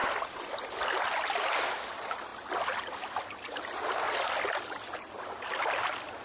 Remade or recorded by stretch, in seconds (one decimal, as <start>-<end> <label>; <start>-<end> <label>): 0.0-6.2 recorded